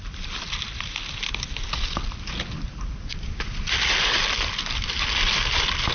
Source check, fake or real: real